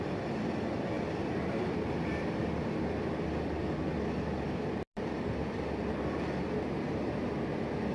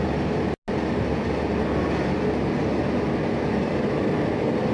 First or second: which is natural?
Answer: second